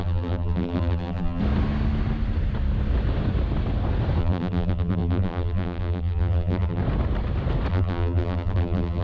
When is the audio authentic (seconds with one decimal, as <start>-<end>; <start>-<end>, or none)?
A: 1.4-4.2; 6.8-7.7